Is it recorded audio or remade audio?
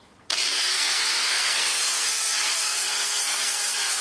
remade